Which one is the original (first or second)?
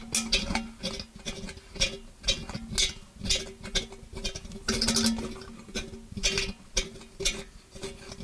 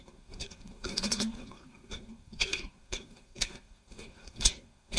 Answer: first